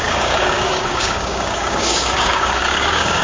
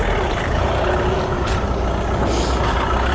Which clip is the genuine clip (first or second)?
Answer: second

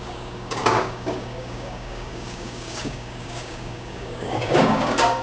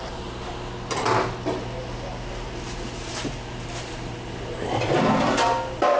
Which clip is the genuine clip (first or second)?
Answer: second